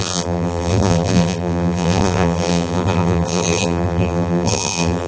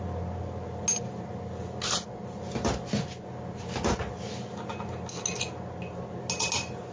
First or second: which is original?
second